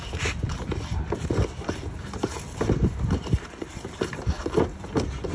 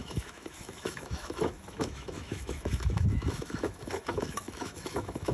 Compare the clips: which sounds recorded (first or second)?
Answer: first